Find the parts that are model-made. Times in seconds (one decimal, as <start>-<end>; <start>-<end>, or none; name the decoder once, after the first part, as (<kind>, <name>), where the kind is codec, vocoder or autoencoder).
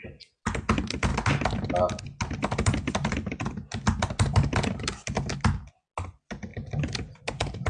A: none